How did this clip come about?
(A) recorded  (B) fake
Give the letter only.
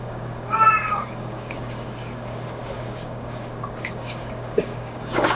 B